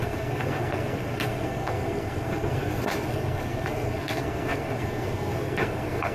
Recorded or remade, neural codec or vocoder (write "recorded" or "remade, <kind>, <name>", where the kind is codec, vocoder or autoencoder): remade, codec, SNAC